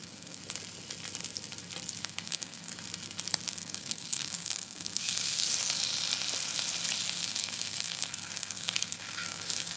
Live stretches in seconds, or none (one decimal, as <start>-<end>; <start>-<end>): 0.4-2.0; 2.7-3.5; 5.4-7.1